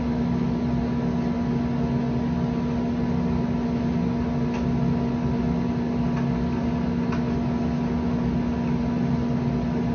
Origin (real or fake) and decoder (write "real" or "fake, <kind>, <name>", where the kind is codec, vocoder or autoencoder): real